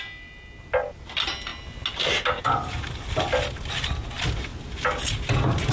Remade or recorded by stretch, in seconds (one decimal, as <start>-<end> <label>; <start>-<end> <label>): 0.0-5.7 recorded